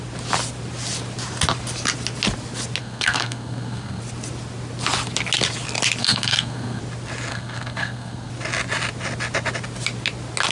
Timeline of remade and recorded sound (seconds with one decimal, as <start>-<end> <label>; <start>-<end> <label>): 0.0-2.8 recorded; 2.8-4.0 remade; 4.0-6.0 recorded; 6.0-6.8 remade; 6.8-7.3 recorded; 7.3-8.3 remade; 8.3-10.5 recorded